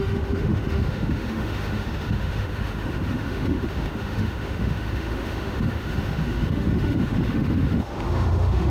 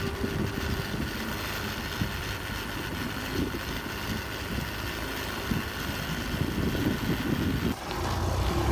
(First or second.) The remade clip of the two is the first